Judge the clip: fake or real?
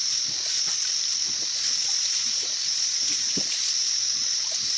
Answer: fake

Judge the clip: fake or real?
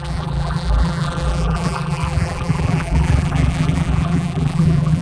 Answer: fake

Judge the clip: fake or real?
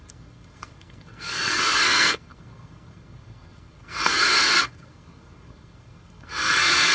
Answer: fake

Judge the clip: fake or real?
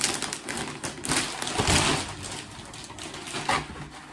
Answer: real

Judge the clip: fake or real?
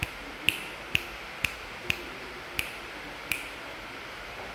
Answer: real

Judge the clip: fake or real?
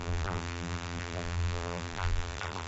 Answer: fake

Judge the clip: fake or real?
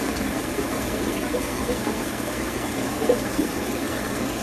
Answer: fake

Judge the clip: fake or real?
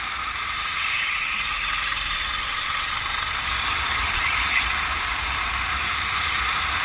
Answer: fake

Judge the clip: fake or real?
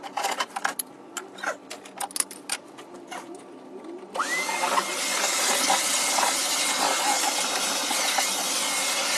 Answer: real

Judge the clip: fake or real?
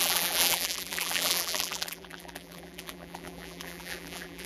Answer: fake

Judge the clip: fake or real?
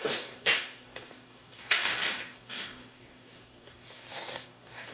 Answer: fake